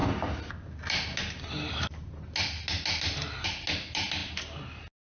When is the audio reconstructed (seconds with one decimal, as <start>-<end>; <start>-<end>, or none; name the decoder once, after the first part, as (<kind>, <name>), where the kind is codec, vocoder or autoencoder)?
none